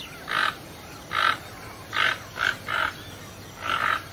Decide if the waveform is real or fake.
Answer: real